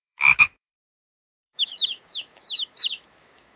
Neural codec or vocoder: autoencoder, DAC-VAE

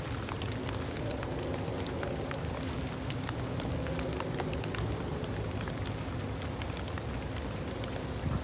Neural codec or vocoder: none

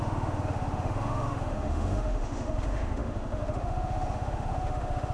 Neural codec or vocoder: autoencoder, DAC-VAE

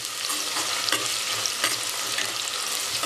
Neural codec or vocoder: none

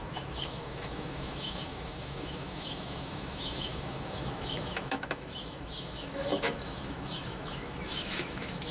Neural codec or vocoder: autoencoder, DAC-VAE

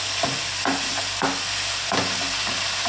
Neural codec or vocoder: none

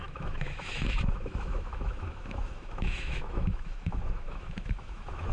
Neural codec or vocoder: autoencoder, DAC-VAE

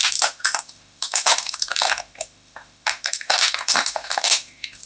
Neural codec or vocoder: autoencoder, DAC-VAE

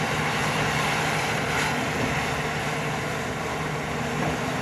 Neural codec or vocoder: none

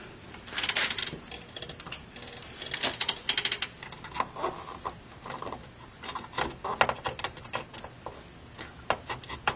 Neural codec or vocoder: none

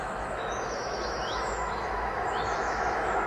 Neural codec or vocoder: autoencoder, DAC-VAE